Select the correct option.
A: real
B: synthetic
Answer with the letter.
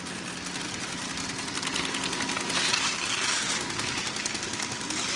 A